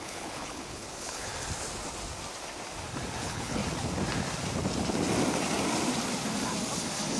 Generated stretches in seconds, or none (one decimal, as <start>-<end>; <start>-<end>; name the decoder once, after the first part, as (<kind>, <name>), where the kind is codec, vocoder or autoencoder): 0.0-1.3 (codec, HILCodec); 3.2-3.6